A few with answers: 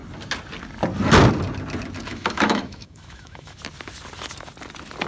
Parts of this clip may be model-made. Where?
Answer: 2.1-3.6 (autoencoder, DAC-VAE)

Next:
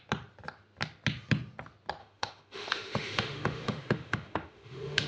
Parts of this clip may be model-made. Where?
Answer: 2.0-5.1 (autoencoder, DAC-VAE)

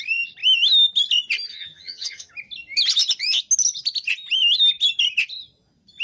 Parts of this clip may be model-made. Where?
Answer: 1.5-2.3 (vocoder, HiFi-GAN)